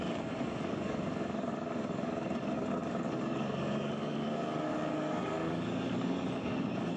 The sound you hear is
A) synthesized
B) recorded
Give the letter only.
A